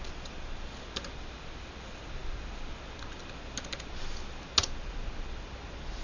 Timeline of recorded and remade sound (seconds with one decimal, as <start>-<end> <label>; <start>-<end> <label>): 0.0-6.0 recorded